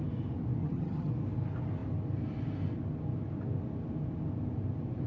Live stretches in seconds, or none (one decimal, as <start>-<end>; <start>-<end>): 0.0-0.6; 1.1-5.1